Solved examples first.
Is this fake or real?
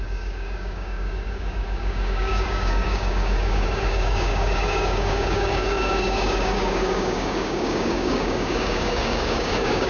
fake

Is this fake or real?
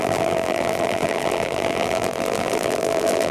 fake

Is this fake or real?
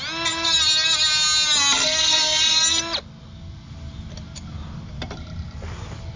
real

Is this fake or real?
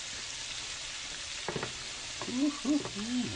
real